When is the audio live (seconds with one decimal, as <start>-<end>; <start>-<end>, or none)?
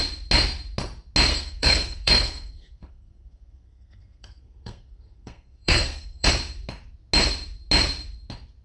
0.0-1.3; 6.3-8.6